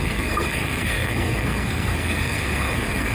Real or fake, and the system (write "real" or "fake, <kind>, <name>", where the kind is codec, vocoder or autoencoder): fake, codec, SNAC